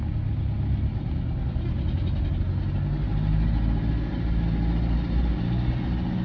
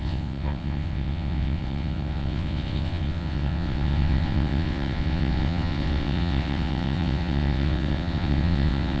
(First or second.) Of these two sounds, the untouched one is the first